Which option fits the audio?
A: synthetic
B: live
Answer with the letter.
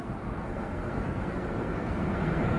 A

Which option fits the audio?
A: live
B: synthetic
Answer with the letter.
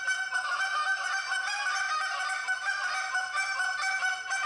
A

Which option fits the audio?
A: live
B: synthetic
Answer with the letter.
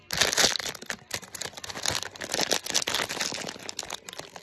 A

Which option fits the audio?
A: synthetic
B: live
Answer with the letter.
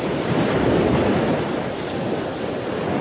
B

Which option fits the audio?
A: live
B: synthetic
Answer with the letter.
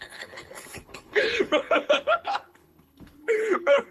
B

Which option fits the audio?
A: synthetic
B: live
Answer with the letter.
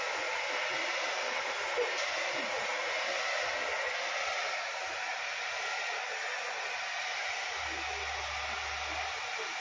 B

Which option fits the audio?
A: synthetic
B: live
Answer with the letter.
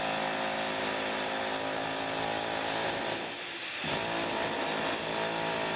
B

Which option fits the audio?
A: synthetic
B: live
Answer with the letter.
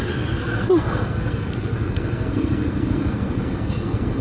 A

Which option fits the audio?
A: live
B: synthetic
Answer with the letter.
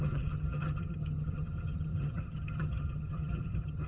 B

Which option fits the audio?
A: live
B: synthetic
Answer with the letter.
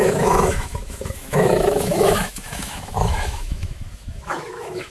B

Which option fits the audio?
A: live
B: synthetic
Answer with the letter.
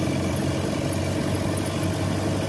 A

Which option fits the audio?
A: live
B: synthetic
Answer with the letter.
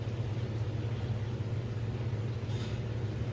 A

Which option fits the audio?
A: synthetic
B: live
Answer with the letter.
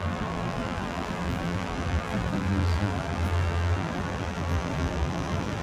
A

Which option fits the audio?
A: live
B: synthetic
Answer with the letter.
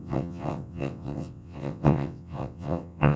B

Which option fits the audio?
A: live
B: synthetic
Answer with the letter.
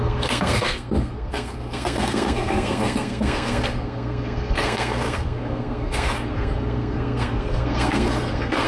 B